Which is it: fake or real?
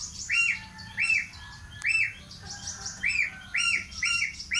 real